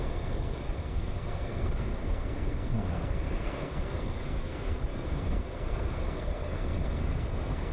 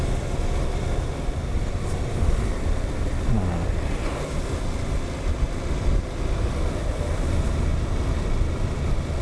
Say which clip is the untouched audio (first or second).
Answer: second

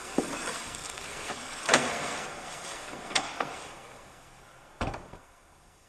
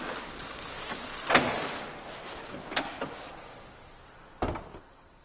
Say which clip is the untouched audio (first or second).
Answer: second